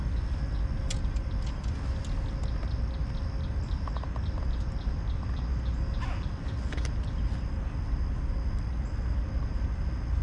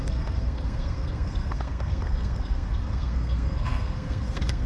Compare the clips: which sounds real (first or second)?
first